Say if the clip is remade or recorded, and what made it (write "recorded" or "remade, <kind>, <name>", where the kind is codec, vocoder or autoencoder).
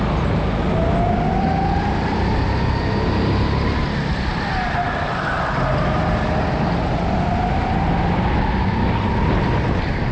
recorded